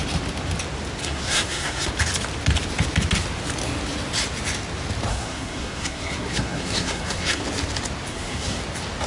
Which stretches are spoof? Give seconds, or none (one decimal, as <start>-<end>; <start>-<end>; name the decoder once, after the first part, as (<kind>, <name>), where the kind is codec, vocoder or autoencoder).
1.0-1.9 (codec, SNAC); 5.1-7.4; 8.1-8.6